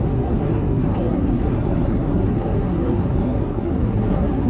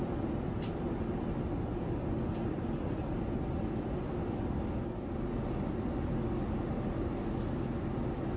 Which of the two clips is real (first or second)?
second